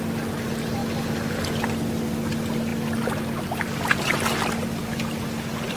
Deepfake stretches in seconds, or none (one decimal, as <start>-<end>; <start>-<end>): none